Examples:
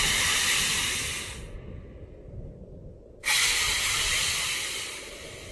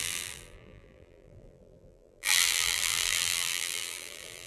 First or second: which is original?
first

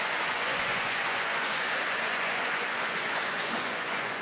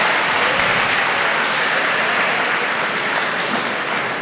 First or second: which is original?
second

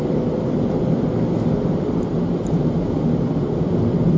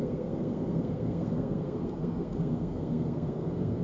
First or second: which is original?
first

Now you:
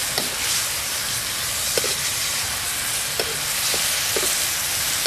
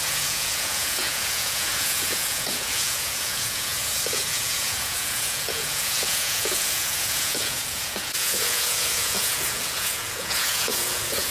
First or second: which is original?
first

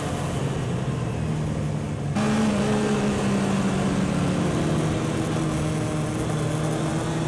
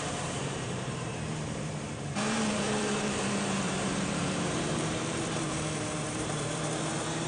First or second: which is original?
first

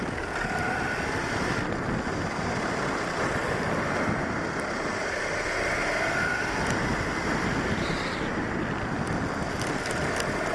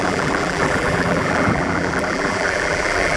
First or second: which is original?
first